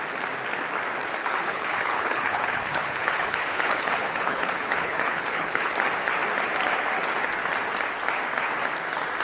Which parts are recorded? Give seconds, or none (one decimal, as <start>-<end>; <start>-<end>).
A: 0.0-1.2; 5.7-9.2